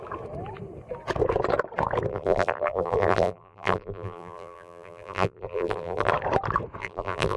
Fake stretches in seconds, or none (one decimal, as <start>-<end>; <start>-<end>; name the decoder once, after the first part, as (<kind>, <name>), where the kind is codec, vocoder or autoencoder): 2.1-6.1 (vocoder, BigVGAN v2); 6.8-7.4